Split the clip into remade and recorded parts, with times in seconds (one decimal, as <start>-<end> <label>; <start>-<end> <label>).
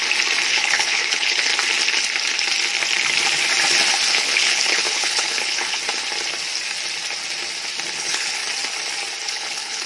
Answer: 0.0-0.5 recorded; 0.5-1.5 remade; 1.5-4.1 recorded; 4.1-5.8 remade; 5.8-7.9 recorded; 7.9-8.4 remade; 8.4-9.3 recorded; 9.3-9.9 remade